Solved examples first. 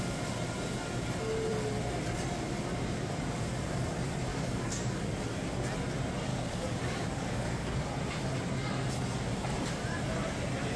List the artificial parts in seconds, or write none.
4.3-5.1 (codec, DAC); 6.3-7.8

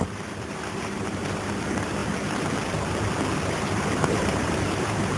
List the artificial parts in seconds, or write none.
0.0-2.0 (vocoder, BigVGAN v2); 3.5-5.2

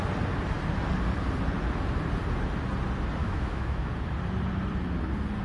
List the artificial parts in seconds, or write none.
3.2-3.9 (autoencoder, DAC-VAE)

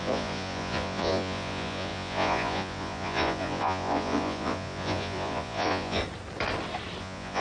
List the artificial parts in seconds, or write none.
0.0-6.0 (vocoder, Vocos); 7.0-7.4

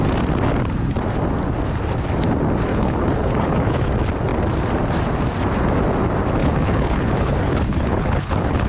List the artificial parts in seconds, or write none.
2.7-3.9 (codec, HILCodec); 6.4-8.7

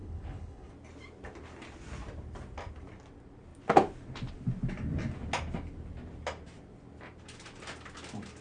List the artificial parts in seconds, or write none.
0.0-0.7 (codec, HILCodec)

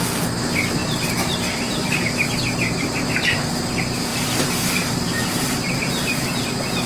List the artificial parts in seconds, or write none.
0.8-3.5 (vocoder, BigVGAN v2); 4.1-6.4

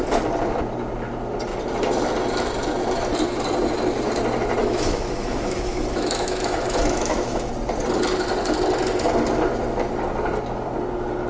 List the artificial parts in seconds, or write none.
4.6-7.5 (autoencoder, DAC-VAE)